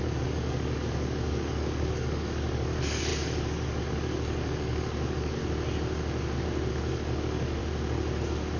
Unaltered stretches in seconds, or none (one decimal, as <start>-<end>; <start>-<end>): 5.4-6.7; 7.6-8.6